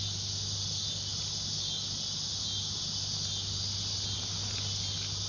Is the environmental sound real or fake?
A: real